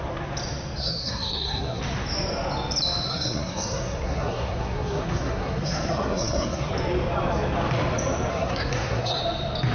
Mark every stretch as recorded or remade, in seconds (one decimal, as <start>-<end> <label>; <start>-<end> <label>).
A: 0.0-0.8 recorded; 0.8-1.8 remade; 1.8-3.1 recorded; 3.1-6.7 remade; 6.7-8.3 recorded; 8.3-9.2 remade; 9.2-9.7 recorded